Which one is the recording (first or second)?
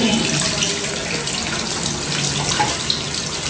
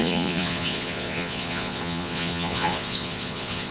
first